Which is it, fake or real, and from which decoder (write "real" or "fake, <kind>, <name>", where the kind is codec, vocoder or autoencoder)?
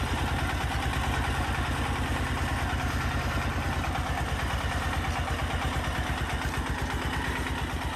real